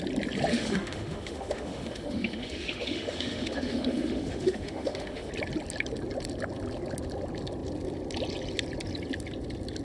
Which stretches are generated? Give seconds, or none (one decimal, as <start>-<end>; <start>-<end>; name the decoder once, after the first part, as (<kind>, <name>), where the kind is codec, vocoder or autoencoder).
0.5-5.3 (autoencoder, DAC-VAE)